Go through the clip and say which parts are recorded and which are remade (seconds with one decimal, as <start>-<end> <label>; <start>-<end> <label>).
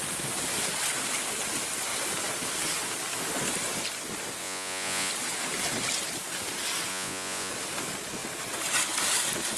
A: 0.0-4.4 recorded; 4.4-5.1 remade; 5.1-6.9 recorded; 6.9-7.5 remade; 7.5-9.6 recorded